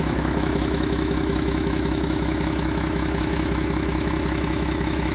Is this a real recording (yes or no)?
no